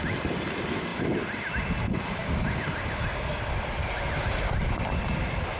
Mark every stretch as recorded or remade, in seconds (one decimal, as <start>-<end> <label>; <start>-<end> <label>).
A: 0.0-2.2 recorded; 2.2-2.7 remade; 2.7-5.6 recorded